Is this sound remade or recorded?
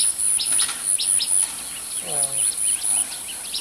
recorded